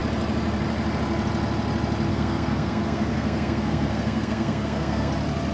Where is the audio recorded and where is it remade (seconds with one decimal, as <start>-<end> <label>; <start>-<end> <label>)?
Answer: 0.0-2.1 recorded; 2.1-5.1 remade; 5.1-5.5 recorded